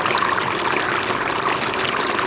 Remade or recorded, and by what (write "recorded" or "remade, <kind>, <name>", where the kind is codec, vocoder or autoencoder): recorded